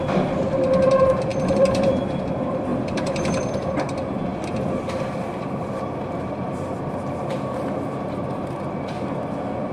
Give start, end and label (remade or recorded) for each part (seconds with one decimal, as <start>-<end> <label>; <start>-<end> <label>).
0.0-1.3 recorded; 1.3-2.2 remade; 2.2-2.7 recorded; 2.7-3.5 remade; 3.5-9.7 recorded